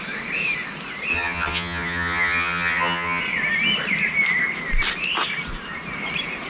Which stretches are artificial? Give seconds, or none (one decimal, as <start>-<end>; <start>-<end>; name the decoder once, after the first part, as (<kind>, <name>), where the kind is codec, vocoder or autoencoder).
1.1-3.2 (vocoder, HiFi-GAN)